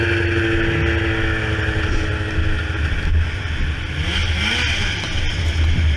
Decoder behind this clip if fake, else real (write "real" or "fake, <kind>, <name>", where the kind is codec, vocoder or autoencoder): real